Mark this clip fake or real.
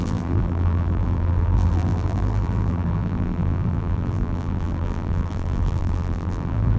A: fake